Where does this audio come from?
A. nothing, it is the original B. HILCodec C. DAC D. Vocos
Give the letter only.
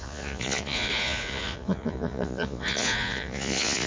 D